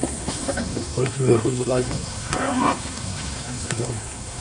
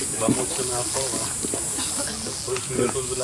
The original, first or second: second